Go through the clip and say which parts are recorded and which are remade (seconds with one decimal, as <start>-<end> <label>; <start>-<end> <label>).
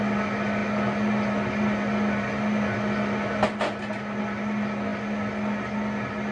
0.0-6.3 recorded